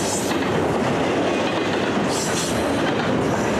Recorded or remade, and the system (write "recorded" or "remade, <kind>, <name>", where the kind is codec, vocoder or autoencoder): recorded